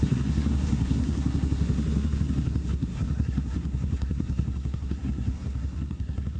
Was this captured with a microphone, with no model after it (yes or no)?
no